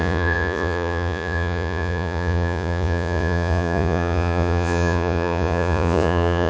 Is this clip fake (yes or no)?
yes